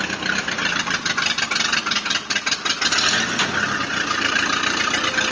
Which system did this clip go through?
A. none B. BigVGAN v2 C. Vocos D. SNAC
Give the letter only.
A